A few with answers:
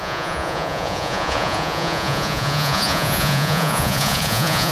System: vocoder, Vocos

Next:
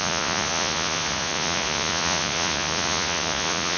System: vocoder, Vocos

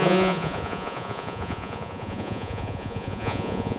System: vocoder, Vocos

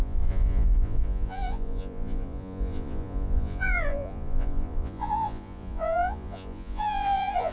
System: vocoder, Vocos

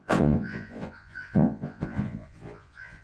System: vocoder, Vocos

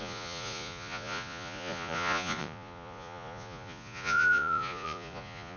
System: vocoder, Vocos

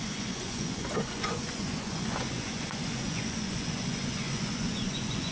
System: vocoder, Vocos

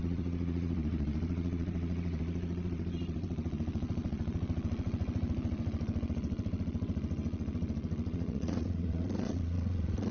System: vocoder, Vocos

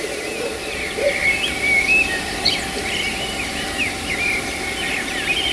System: none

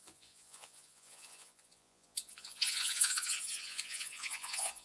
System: vocoder, Vocos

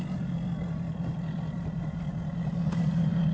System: none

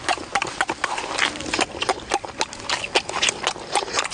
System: none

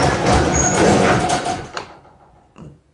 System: vocoder, Vocos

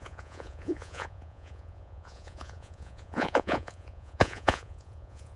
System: vocoder, Vocos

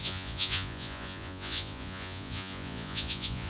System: vocoder, Vocos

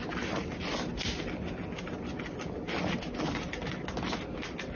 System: none